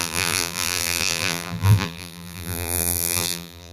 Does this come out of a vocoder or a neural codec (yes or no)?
yes